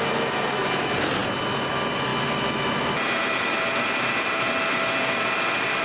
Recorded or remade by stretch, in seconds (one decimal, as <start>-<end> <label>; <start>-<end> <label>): 0.0-5.8 recorded

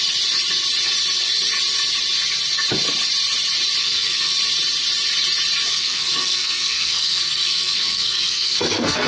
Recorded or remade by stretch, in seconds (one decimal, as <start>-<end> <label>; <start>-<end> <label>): 0.0-3.8 recorded; 3.8-4.3 remade; 4.3-5.7 recorded; 5.7-9.1 remade

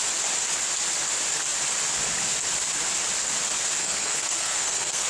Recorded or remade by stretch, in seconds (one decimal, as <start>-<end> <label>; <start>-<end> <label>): 0.0-3.8 recorded; 3.8-5.1 remade

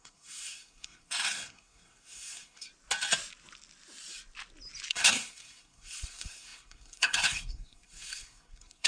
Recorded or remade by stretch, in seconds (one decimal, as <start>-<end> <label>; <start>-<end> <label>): 0.0-2.7 remade; 2.7-4.9 recorded; 4.9-8.9 remade

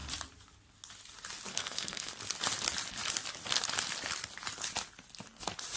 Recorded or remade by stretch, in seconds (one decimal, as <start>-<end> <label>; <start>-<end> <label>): 0.0-1.5 recorded; 1.5-2.1 remade; 2.1-5.8 recorded

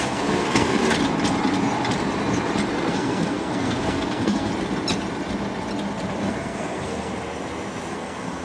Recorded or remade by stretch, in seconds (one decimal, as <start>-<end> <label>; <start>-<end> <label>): 0.0-0.8 remade; 0.8-2.9 recorded; 2.9-4.5 remade; 4.5-6.2 recorded; 6.2-7.1 remade; 7.1-7.9 recorded; 7.9-8.4 remade